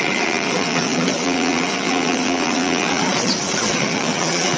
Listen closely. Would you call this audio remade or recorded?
remade